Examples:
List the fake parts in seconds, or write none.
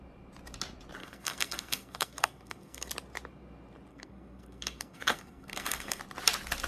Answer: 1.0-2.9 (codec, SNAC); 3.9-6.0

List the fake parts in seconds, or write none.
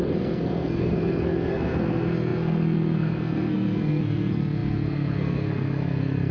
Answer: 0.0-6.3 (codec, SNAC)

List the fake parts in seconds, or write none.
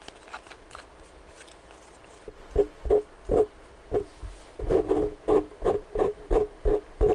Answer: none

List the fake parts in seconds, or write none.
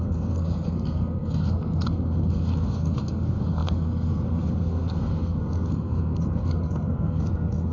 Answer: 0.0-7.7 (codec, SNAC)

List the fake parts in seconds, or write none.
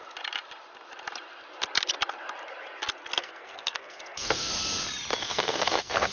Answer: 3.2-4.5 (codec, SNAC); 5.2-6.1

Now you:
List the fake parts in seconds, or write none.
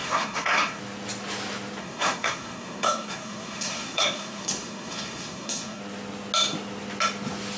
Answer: 0.0-0.8 (codec, SNAC); 1.8-5.8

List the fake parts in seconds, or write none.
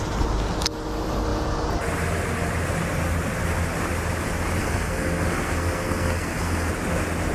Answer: 4.6-6.7 (codec, SNAC)